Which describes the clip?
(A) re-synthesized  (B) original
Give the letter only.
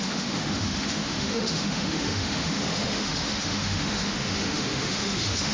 A